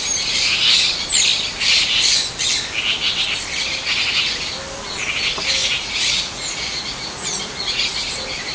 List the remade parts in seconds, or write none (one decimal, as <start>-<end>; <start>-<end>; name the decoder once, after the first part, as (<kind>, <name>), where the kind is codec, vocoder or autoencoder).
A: 5.6-8.1 (vocoder, Vocos)